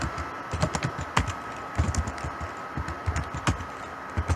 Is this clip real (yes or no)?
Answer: yes